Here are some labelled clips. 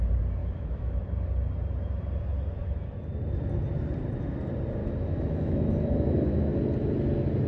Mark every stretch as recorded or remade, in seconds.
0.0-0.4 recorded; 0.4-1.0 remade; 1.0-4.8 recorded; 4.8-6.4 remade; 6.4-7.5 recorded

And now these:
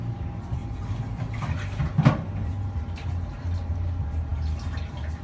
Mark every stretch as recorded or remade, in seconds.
0.0-5.2 recorded

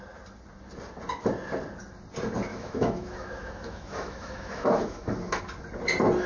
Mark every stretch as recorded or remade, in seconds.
0.0-2.5 recorded; 2.5-5.4 remade; 5.4-6.3 recorded